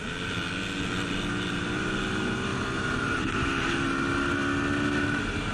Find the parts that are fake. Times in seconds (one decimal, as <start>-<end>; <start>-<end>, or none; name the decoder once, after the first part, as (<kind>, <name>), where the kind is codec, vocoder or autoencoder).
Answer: 2.5-3.7 (vocoder, BigVGAN v2)